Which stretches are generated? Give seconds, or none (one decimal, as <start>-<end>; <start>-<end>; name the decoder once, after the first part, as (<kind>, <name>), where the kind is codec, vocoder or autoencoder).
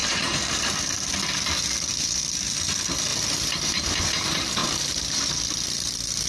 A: 0.0-1.1 (vocoder, BigVGAN v2); 3.1-4.0; 4.6-5.2